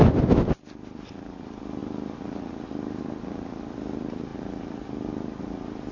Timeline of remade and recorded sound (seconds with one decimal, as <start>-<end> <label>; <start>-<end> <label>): 0.0-5.9 recorded